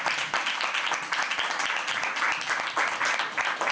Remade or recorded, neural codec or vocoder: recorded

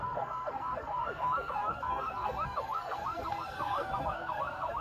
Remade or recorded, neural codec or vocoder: remade, codec, SNAC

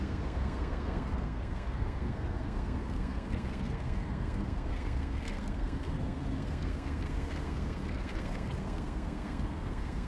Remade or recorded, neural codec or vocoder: remade, codec, SNAC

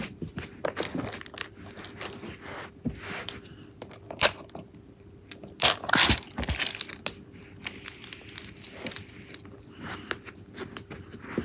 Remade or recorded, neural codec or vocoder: recorded